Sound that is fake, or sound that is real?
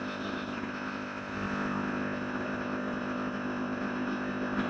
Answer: fake